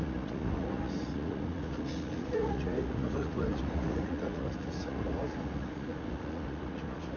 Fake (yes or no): yes